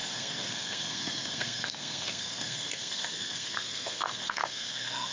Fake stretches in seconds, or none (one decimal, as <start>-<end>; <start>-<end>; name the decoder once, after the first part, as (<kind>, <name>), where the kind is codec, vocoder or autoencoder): 0.0-5.1 (codec, SNAC)